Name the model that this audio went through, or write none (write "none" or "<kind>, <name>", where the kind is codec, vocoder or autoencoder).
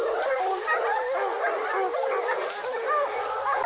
none